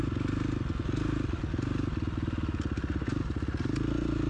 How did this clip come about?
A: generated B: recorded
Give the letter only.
B